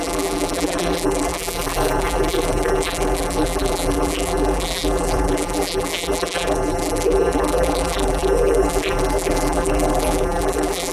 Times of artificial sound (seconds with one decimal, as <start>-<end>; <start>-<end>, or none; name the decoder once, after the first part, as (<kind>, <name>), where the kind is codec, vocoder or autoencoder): 0.0-10.9 (vocoder, BigVGAN v2)